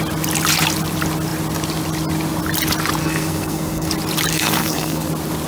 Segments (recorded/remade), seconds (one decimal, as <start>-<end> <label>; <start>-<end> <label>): 0.0-3.0 recorded; 3.0-3.9 remade; 3.9-4.3 recorded; 4.3-5.1 remade; 5.1-5.5 recorded